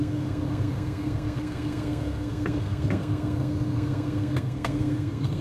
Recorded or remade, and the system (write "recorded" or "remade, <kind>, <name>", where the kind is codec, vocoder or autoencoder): remade, codec, SNAC